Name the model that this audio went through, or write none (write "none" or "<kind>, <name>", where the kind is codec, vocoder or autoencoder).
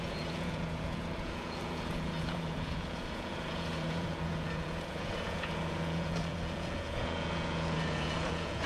vocoder, Vocos